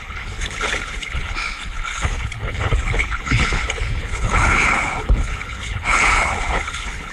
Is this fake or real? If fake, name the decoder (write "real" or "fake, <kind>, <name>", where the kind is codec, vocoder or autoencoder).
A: fake, codec, HILCodec